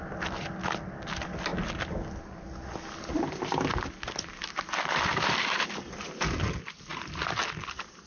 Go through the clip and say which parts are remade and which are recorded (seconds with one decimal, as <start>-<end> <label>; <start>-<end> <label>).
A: 0.0-8.1 recorded